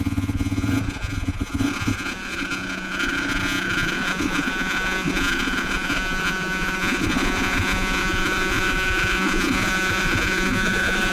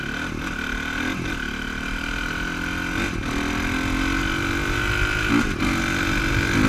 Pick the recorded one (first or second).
second